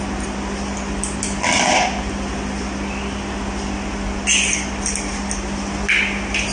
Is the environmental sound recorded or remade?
recorded